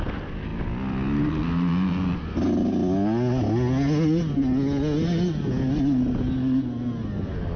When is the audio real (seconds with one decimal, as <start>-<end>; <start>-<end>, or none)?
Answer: 0.0-7.6